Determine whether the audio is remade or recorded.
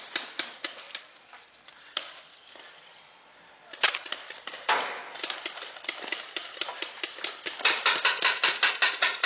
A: recorded